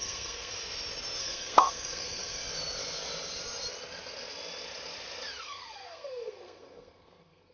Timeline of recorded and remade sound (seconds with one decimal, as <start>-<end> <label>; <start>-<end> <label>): 0.0-0.5 remade; 0.5-1.2 recorded; 1.2-2.4 remade; 2.4-5.4 recorded; 5.4-7.5 remade

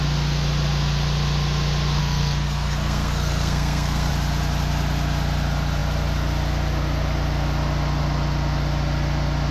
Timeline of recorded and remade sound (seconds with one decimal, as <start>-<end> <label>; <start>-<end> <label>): 0.0-2.0 recorded; 2.0-4.1 remade; 4.1-9.5 recorded